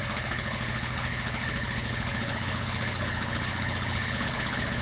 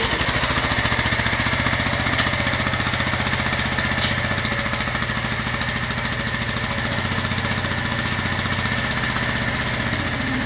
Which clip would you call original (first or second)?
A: second